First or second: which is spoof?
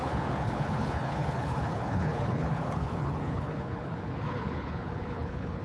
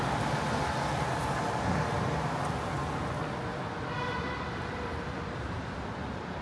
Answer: first